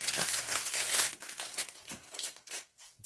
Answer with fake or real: fake